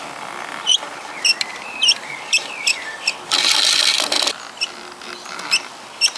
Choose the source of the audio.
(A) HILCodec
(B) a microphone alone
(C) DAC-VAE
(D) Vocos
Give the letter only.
B